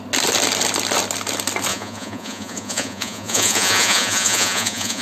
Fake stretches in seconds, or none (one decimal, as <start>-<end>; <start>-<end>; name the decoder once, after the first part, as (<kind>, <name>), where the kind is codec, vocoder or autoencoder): 1.7-5.0 (vocoder, Vocos)